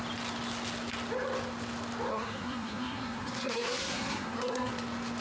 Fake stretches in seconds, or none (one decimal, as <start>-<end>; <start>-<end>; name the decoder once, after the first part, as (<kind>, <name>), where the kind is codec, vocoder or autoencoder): 2.1-4.7 (codec, SNAC)